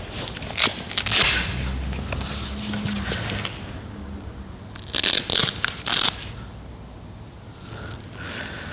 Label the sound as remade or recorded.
recorded